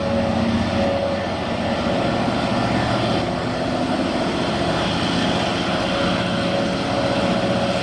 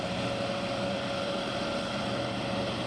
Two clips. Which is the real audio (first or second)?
first